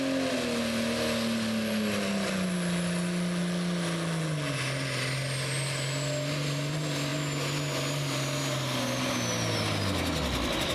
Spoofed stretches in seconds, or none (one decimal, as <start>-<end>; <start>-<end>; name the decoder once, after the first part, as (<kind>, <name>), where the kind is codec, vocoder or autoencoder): none